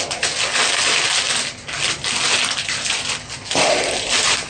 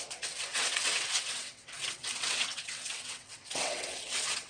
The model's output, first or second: second